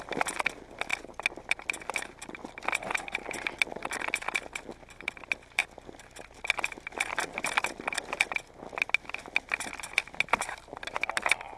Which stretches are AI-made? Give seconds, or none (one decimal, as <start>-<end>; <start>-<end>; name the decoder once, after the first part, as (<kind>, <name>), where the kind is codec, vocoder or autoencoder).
none

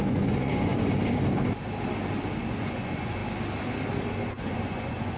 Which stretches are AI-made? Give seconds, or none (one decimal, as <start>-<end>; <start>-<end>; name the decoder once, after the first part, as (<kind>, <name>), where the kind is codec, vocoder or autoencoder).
0.0-0.7 (vocoder, Vocos); 2.4-3.2; 4.3-5.2

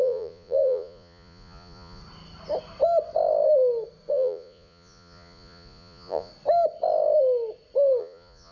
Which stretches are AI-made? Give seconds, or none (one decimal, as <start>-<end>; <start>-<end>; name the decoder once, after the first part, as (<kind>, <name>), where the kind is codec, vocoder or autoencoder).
0.0-2.0 (vocoder, Vocos); 4.1-6.3; 8.0-8.5

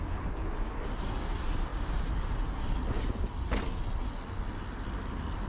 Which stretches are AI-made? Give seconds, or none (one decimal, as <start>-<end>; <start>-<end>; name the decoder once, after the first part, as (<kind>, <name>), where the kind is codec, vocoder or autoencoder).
none